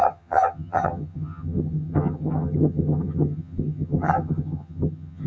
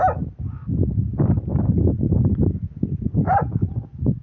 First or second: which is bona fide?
second